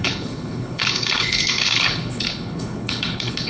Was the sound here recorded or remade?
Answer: remade